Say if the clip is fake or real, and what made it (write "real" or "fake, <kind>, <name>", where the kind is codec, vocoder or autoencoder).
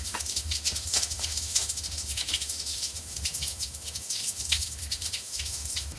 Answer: fake, autoencoder, DAC-VAE